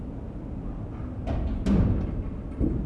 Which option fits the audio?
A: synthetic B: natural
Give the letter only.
B